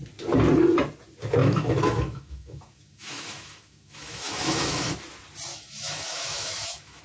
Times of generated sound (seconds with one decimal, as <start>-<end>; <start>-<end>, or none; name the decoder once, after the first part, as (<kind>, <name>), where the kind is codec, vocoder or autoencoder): 1.4-4.9 (autoencoder, DAC-VAE); 5.5-7.0